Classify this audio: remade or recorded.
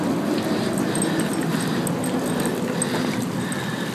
recorded